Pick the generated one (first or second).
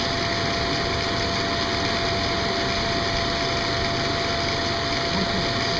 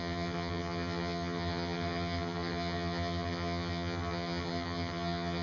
second